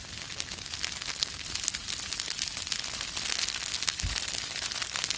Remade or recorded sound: recorded